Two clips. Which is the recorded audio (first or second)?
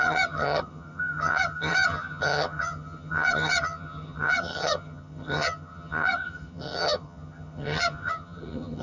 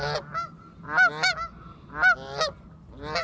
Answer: second